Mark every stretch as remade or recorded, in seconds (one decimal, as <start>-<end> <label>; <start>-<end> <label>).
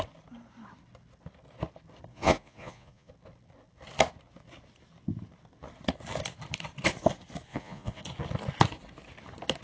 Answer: 0.0-2.1 recorded; 2.1-3.1 remade; 3.1-7.5 recorded; 7.5-8.0 remade; 8.0-9.6 recorded